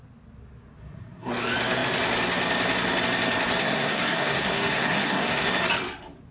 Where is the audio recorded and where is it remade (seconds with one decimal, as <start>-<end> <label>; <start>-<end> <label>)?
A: 0.0-0.8 recorded; 0.8-1.3 remade; 1.3-3.6 recorded; 3.6-5.5 remade; 5.5-6.3 recorded

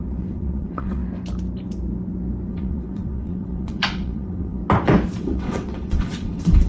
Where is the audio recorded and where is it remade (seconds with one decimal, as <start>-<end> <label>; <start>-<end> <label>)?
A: 0.0-1.0 remade; 1.0-2.5 recorded; 2.5-4.6 remade; 4.6-5.2 recorded; 5.2-6.7 remade

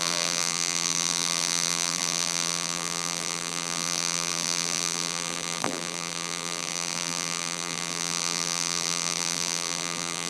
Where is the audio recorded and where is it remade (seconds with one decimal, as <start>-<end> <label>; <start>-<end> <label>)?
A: 0.0-10.3 remade

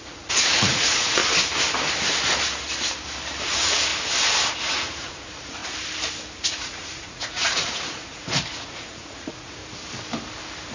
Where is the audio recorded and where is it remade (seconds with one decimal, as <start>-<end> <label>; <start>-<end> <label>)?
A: 0.0-1.2 remade; 1.2-3.4 recorded; 3.4-3.9 remade; 3.9-4.7 recorded; 4.7-5.6 remade; 5.6-6.4 recorded; 6.4-9.6 remade; 9.6-10.7 recorded

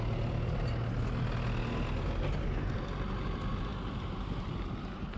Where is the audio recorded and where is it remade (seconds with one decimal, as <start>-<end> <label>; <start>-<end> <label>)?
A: 0.0-5.2 recorded

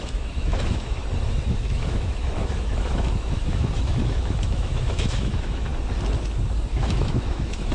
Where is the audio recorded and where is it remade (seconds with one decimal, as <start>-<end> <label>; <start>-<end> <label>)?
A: 0.0-1.0 remade; 1.0-1.5 recorded; 1.5-5.7 remade; 5.7-6.7 recorded; 6.7-7.7 remade

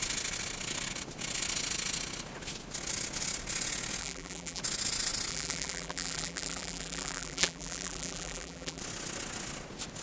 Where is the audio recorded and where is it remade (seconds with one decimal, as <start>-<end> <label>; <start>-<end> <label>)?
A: 0.0-4.0 recorded; 4.0-4.6 remade; 4.6-5.3 recorded; 5.3-8.8 remade; 8.8-10.0 recorded